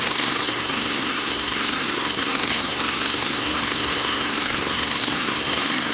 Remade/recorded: remade